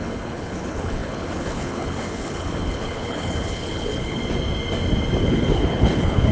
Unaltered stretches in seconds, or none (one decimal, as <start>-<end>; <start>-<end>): 4.2-5.2